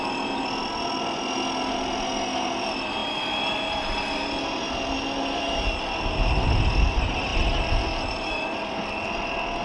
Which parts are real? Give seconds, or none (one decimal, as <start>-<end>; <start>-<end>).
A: 0.0-9.6